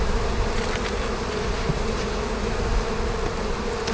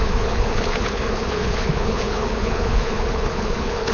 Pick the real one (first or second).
first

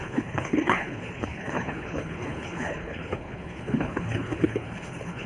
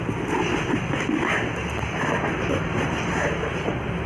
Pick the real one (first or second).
second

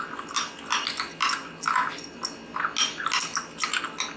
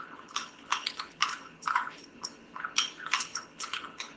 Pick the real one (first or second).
first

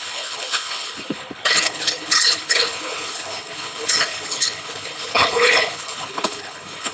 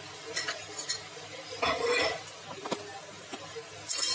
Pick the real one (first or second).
second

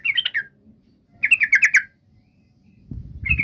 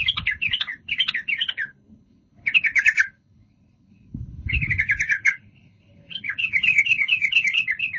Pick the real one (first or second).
first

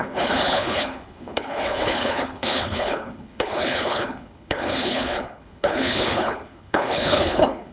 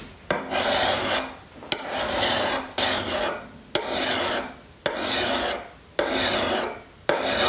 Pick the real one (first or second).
second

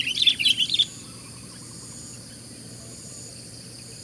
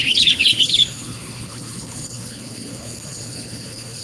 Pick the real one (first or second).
first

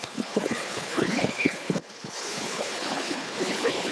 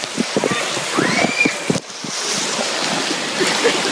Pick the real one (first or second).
second